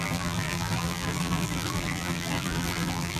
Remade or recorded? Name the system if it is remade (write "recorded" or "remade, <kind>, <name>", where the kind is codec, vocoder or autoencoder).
remade, vocoder, BigVGAN v2